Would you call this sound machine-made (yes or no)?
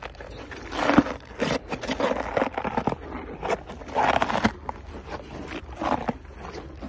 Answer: no